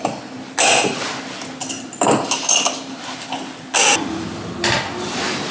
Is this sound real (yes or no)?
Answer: yes